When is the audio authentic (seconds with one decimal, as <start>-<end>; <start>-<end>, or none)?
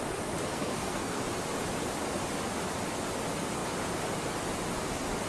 0.0-0.4; 1.2-5.3